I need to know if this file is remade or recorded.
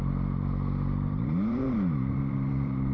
remade